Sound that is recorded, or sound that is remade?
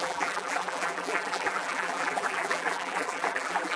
remade